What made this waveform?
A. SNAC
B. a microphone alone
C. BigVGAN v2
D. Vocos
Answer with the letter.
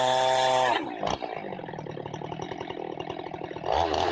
B